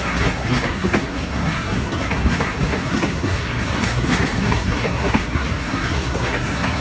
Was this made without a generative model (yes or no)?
no